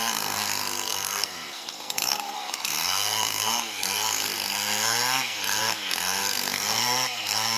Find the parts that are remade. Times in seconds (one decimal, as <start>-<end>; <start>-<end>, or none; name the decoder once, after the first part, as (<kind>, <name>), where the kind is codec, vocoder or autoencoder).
0.0-7.6 (codec, SNAC)